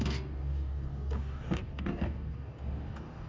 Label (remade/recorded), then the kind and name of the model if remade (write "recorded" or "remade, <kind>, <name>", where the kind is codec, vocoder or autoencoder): remade, codec, DAC